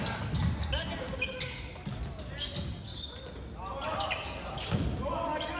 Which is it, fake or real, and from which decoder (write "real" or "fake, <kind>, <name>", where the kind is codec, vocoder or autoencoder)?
real